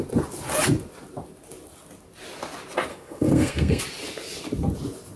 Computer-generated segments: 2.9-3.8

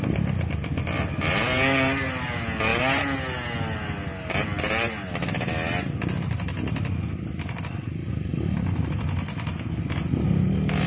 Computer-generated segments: none

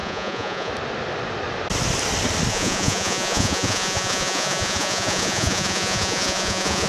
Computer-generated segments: 0.0-0.7; 2.5-6.9